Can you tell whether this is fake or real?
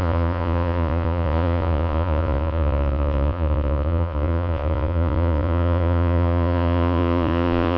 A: fake